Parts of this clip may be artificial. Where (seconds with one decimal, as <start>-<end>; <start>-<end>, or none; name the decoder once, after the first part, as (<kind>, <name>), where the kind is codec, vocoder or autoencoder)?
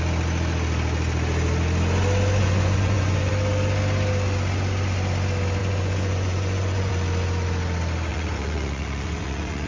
2.4-3.3 (vocoder, Vocos); 5.6-6.9; 8.1-9.7